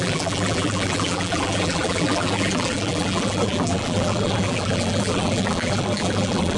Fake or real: fake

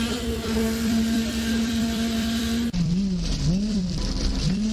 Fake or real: fake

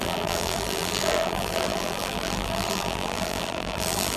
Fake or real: fake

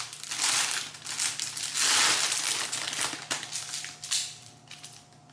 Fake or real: real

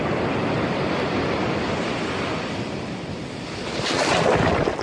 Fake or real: fake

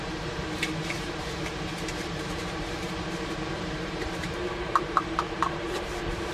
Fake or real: fake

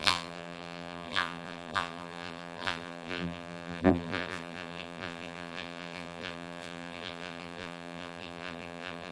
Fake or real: fake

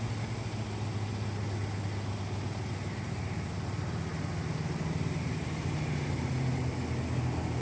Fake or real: real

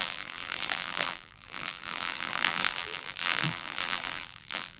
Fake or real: fake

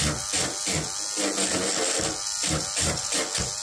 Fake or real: real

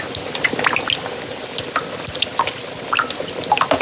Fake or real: real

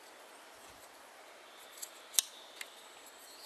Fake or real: real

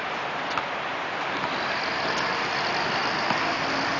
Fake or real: real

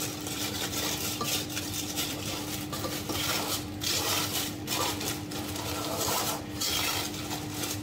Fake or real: fake